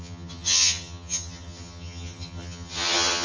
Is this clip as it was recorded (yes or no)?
no